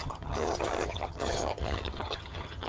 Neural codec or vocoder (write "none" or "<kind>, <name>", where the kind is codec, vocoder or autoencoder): vocoder, HiFi-GAN